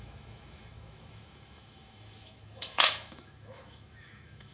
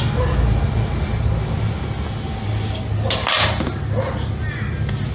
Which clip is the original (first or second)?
second